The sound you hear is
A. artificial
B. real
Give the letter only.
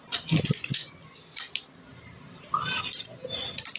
B